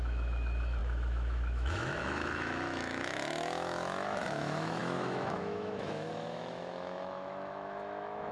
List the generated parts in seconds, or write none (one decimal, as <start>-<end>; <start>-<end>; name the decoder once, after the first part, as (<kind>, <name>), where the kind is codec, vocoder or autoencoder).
0.0-8.3 (autoencoder, DAC-VAE)